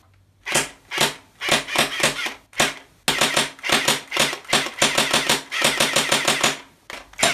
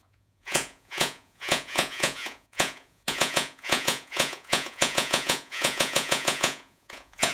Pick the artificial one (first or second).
second